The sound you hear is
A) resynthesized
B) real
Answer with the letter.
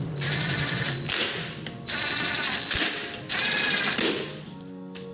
B